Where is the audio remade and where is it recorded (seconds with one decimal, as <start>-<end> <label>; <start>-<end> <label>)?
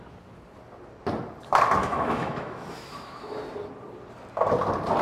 0.0-1.8 recorded; 1.8-3.4 remade; 3.4-5.0 recorded